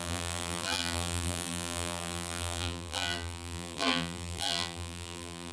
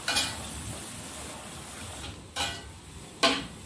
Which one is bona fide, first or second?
second